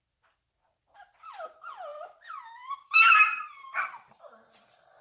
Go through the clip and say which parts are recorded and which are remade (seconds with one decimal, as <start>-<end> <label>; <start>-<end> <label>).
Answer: 0.0-1.9 recorded; 1.9-4.5 remade; 4.5-5.0 recorded